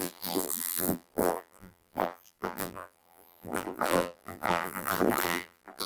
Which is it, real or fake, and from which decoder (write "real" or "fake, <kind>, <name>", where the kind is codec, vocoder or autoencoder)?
fake, vocoder, BigVGAN v2